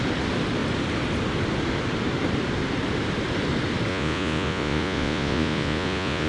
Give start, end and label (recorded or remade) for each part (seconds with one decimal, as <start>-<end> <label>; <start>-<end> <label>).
0.0-3.9 recorded; 3.9-6.3 remade